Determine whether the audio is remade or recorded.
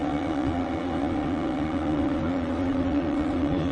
remade